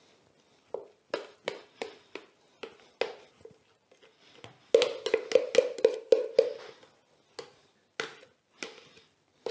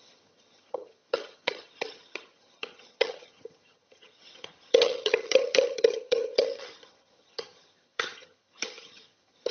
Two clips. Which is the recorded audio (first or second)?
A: first